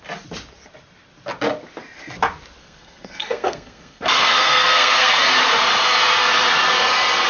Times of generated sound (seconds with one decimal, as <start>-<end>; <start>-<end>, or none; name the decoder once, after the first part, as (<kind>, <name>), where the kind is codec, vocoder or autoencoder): 2.6-5.2 (codec, SNAC)